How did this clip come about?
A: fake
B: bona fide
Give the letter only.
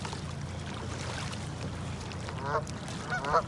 B